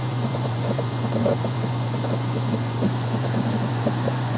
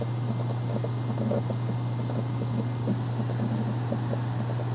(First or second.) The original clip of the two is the second